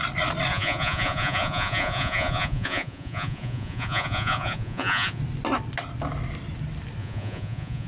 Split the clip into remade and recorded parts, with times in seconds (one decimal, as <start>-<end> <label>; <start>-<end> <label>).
0.0-0.5 recorded; 0.5-5.2 remade; 5.2-7.0 recorded; 7.0-7.9 remade